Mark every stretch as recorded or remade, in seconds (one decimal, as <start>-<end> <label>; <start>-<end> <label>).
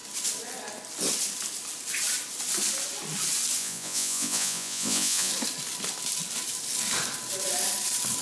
0.0-3.6 recorded; 3.6-5.3 remade; 5.3-8.2 recorded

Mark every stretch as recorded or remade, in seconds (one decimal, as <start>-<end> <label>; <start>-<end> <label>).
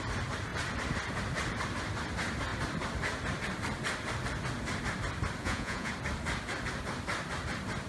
0.0-5.4 recorded; 5.4-5.9 remade; 5.9-7.9 recorded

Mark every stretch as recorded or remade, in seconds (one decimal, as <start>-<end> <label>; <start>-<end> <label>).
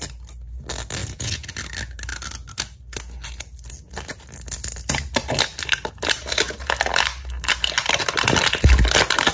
0.0-1.0 recorded; 1.0-1.5 remade; 1.5-9.3 recorded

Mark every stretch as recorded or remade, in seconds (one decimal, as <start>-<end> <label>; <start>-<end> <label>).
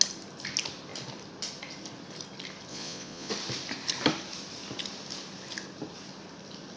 0.0-2.7 recorded; 2.7-3.3 remade; 3.3-6.8 recorded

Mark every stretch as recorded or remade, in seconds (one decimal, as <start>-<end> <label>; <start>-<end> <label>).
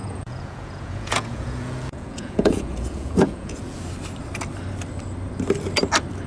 0.0-3.8 remade; 3.8-6.3 recorded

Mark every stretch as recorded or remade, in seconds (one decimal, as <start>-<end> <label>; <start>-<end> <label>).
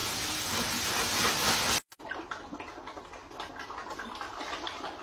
0.0-5.0 recorded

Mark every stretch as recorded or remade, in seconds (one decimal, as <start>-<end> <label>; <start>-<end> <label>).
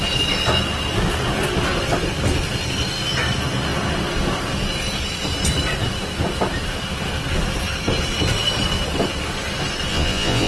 0.0-9.9 recorded; 9.9-10.5 remade